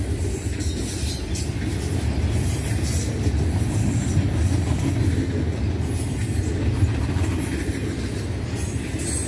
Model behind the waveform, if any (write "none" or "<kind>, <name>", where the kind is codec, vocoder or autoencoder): none